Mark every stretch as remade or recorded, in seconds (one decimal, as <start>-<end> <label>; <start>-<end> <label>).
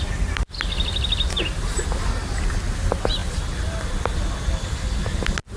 0.0-5.6 recorded